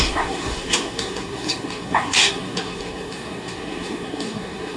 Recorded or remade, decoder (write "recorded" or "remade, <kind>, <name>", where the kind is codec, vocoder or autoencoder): remade, codec, SNAC